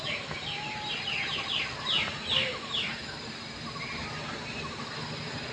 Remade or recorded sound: recorded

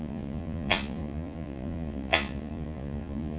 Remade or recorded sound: remade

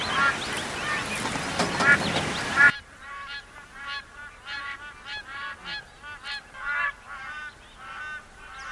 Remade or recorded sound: recorded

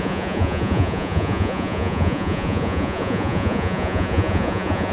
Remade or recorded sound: remade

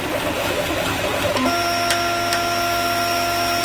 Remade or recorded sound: recorded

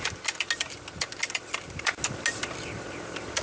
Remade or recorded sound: recorded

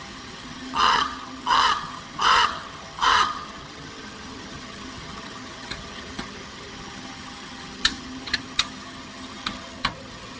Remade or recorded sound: remade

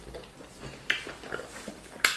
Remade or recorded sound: recorded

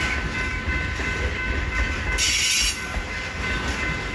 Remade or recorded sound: recorded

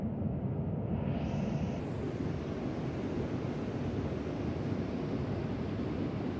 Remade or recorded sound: recorded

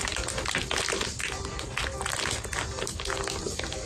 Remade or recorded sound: recorded